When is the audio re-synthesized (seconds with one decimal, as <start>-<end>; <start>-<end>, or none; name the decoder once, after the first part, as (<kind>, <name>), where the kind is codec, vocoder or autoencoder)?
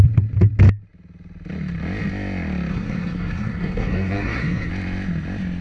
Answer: 2.7-4.7 (codec, SNAC)